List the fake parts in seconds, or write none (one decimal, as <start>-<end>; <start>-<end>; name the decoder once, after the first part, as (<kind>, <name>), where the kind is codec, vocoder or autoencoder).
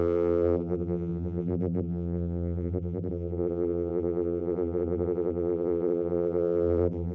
0.0-7.1 (vocoder, BigVGAN v2)